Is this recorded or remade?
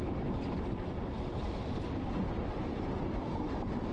recorded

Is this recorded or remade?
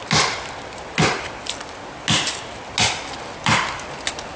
recorded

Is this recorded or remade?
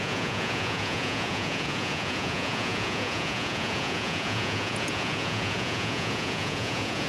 remade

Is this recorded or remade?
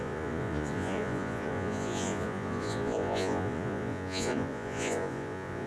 remade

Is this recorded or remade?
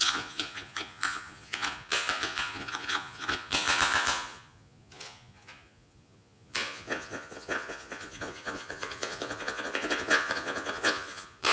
remade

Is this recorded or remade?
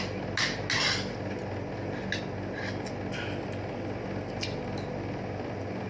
recorded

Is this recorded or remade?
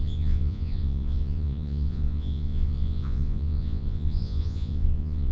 remade